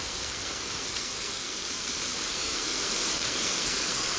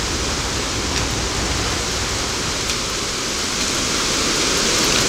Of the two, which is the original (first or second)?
second